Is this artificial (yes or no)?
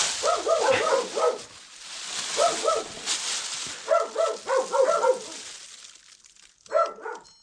no